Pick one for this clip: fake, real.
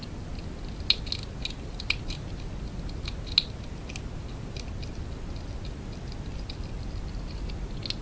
real